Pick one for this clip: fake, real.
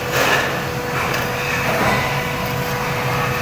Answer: real